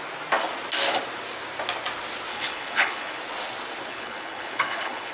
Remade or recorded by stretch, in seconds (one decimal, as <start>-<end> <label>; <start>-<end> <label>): 0.0-2.3 recorded; 2.3-3.2 remade; 3.2-3.9 recorded; 3.9-5.1 remade